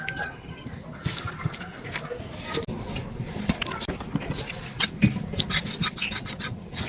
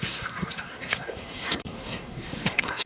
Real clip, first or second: first